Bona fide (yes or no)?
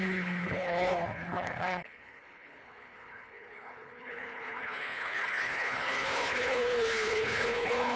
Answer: no